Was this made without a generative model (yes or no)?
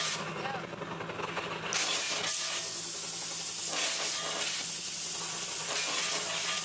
yes